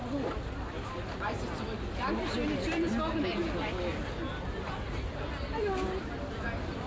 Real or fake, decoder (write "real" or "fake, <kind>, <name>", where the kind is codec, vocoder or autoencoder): real